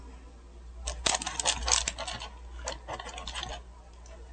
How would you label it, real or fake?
real